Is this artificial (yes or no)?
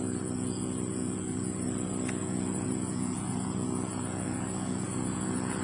yes